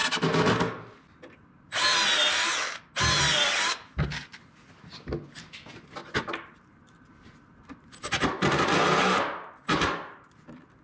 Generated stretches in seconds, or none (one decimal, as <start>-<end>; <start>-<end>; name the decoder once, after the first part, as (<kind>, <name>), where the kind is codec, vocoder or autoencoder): 6.0-10.8 (vocoder, BigVGAN v2)